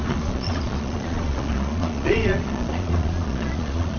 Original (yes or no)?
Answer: no